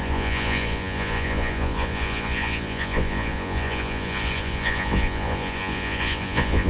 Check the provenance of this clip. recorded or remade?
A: remade